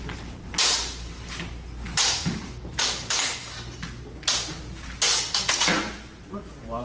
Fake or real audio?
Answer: real